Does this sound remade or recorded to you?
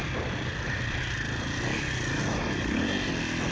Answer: recorded